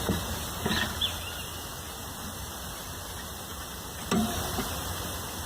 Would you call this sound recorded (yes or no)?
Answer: yes